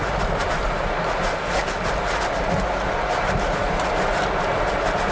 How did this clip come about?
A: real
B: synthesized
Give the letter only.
A